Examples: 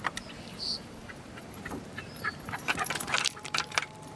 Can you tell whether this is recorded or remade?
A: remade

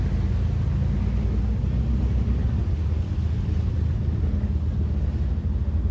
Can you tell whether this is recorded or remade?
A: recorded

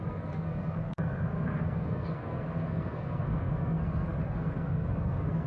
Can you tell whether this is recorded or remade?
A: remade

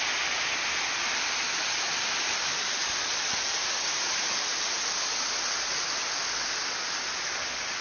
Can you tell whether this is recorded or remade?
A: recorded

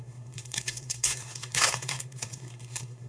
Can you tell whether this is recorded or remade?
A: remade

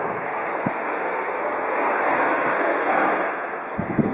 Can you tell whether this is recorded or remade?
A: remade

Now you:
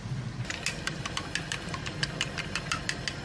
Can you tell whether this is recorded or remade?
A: recorded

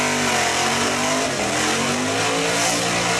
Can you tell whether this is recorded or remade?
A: recorded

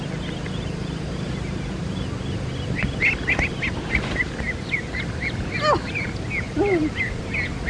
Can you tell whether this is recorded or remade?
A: recorded